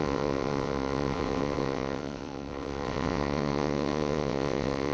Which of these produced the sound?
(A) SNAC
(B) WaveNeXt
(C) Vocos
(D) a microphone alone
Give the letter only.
B